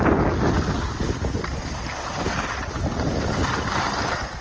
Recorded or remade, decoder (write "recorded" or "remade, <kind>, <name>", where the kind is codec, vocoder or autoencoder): recorded